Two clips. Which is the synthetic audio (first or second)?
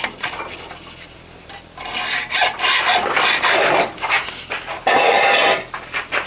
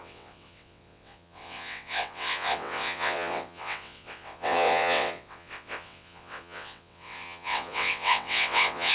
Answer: second